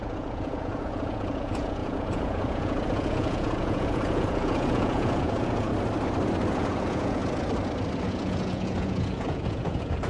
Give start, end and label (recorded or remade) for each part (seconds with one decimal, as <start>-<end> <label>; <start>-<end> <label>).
0.0-5.7 remade; 5.7-6.5 recorded; 6.5-7.2 remade; 7.2-8.0 recorded; 8.0-10.1 remade